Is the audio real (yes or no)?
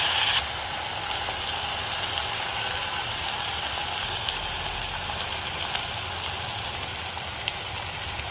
yes